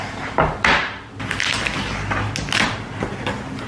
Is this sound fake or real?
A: real